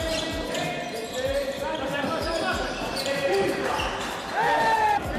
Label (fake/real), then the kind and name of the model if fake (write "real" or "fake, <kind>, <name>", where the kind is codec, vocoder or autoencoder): real